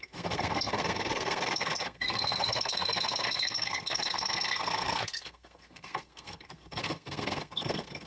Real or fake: fake